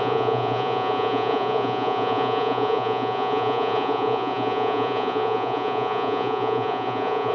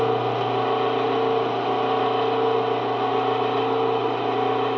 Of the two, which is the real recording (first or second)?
second